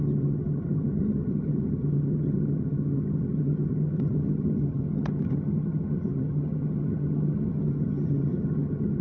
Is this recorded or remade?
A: remade